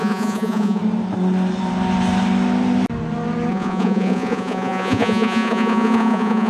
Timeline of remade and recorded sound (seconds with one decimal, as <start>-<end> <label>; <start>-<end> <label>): 0.0-0.8 remade; 0.8-3.5 recorded; 3.5-6.5 remade